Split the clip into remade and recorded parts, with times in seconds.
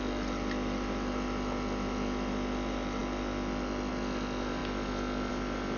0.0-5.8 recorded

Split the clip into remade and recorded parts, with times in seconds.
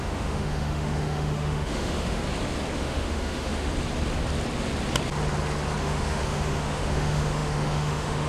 0.0-2.2 remade; 2.2-2.8 recorded; 2.8-3.7 remade; 3.7-5.8 recorded; 5.8-8.3 remade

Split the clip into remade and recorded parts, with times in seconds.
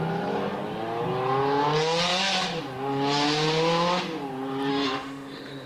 0.0-4.7 recorded; 4.7-5.7 remade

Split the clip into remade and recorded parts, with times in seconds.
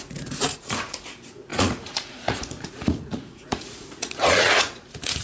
0.0-5.2 remade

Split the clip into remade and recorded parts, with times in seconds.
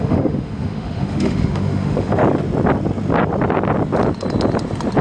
0.0-2.2 remade; 2.2-5.0 recorded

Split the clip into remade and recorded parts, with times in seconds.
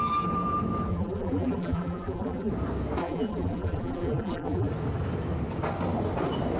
0.0-0.9 recorded; 0.9-2.5 remade; 2.5-3.0 recorded; 3.0-4.7 remade; 4.7-6.6 recorded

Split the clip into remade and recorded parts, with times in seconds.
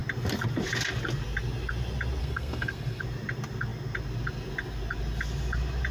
0.0-2.2 recorded; 2.2-3.0 remade; 3.0-5.9 recorded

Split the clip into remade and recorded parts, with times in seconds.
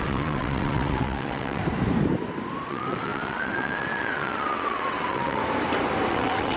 0.0-1.6 remade; 1.6-2.7 recorded; 2.7-5.4 remade; 5.4-6.1 recorded; 6.1-6.6 remade